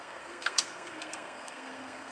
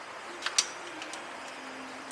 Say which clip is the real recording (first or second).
second